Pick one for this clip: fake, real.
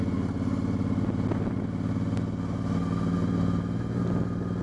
real